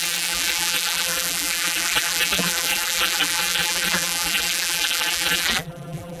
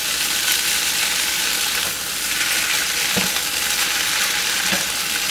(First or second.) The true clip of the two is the second